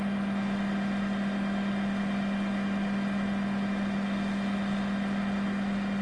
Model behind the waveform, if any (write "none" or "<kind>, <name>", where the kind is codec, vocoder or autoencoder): none